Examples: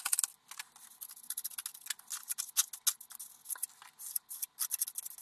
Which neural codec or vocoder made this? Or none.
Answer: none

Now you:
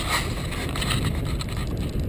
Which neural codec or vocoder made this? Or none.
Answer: vocoder, BigVGAN v2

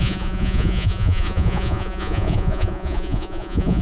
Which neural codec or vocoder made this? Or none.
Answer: vocoder, Vocos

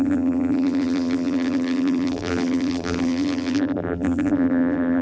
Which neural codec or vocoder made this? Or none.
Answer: vocoder, BigVGAN v2